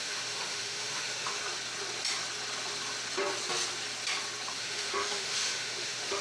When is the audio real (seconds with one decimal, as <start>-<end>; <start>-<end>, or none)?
1.4-4.6